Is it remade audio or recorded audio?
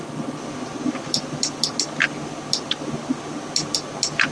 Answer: recorded